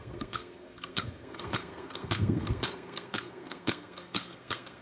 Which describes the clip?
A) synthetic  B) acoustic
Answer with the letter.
A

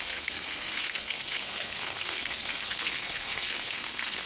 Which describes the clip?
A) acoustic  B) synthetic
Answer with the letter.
B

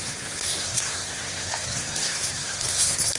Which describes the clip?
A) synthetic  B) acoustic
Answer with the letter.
A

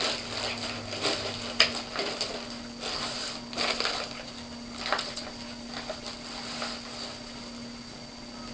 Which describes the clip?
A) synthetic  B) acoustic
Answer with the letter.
B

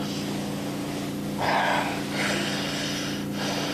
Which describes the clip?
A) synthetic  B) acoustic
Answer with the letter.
B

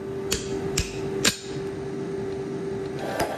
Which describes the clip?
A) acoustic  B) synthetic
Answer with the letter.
A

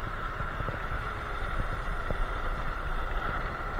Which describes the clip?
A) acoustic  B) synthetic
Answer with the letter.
B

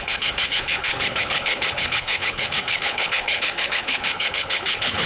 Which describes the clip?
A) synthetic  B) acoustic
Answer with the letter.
A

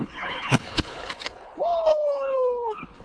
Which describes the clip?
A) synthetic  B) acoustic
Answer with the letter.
A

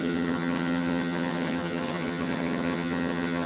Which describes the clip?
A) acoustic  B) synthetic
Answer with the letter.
B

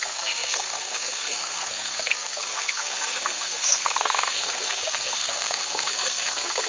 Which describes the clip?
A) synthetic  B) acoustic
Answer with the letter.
A